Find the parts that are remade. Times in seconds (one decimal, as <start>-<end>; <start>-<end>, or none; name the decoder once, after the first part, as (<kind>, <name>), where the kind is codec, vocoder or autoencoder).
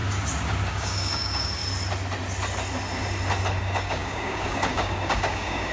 0.7-1.6 (codec, DAC); 3.6-5.7